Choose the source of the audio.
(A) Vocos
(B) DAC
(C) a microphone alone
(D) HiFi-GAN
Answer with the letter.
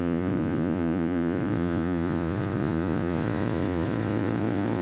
A